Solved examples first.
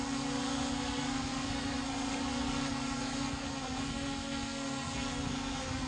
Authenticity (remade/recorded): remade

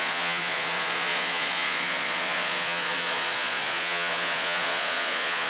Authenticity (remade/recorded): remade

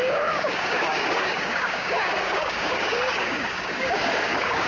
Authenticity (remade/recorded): remade